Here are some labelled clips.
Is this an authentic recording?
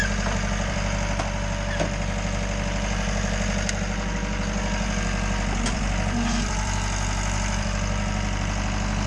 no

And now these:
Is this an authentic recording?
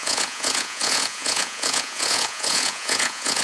no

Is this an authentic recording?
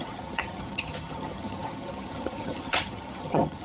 no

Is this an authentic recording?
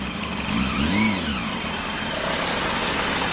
yes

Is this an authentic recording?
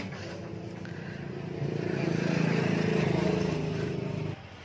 no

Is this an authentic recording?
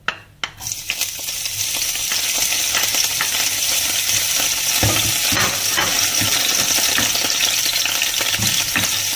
yes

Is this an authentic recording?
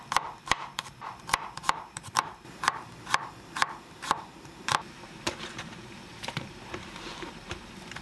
no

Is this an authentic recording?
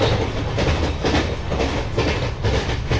yes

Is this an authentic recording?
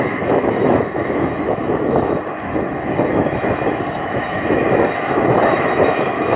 no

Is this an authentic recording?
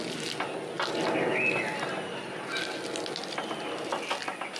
yes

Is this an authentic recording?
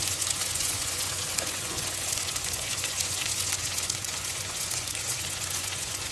no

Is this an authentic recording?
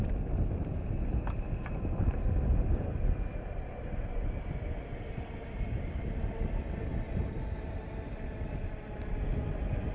yes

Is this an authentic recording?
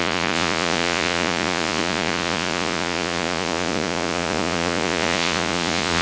no